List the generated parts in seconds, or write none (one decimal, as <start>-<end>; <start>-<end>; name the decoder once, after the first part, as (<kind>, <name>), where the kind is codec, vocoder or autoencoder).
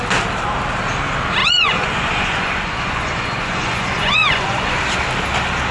1.4-4.8 (vocoder, Vocos)